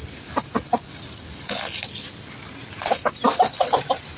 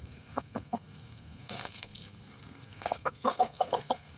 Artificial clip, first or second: second